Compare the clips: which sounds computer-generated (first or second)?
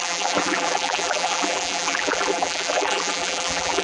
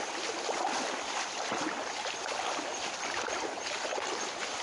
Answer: first